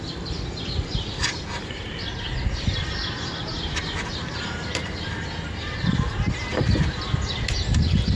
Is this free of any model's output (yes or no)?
yes